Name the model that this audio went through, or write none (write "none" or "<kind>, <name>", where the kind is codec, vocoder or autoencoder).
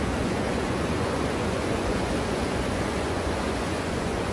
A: vocoder, Vocos